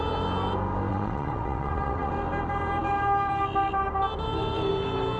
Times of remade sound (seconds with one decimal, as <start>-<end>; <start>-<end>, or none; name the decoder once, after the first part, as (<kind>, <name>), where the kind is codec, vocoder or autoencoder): 0.9-2.1 (vocoder, WaveNeXt)